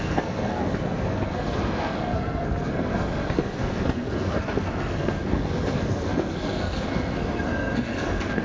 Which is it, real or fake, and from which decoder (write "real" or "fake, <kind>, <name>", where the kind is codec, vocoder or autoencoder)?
fake, codec, SNAC